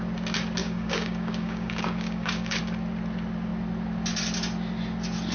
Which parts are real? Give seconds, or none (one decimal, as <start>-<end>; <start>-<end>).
0.0-0.6; 2.6-5.3